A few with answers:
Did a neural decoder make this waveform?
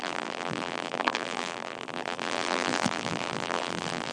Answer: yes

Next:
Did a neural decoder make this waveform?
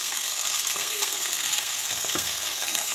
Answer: yes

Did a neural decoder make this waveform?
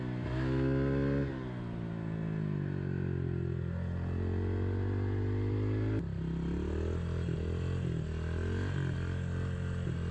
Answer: no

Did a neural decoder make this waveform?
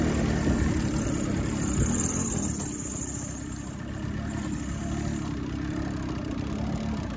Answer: no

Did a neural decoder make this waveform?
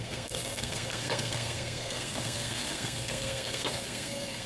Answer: yes